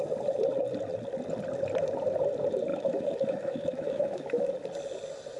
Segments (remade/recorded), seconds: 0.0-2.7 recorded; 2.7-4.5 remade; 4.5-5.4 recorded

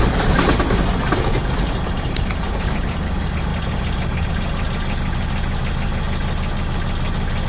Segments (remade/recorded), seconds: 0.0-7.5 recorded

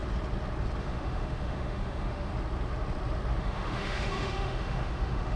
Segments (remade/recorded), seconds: 0.0-0.8 recorded; 0.8-2.3 remade; 2.3-3.4 recorded; 3.4-5.4 remade

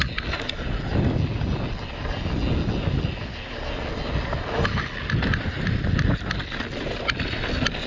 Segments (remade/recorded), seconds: 0.0-7.9 recorded

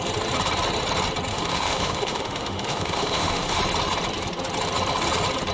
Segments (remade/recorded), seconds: 0.0-1.3 recorded; 1.3-3.6 remade; 3.6-5.5 recorded

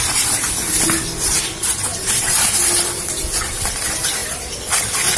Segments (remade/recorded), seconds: 0.0-1.9 recorded; 1.9-2.4 remade; 2.4-4.2 recorded; 4.2-4.8 remade; 4.8-5.2 recorded

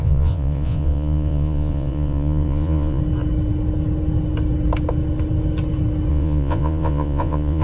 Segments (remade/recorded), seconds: 0.0-3.0 remade; 3.0-6.1 recorded; 6.1-7.6 remade